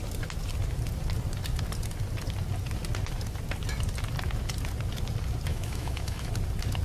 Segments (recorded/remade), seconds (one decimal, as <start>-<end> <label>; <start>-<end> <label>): 0.0-5.5 recorded; 5.5-6.3 remade; 6.3-6.8 recorded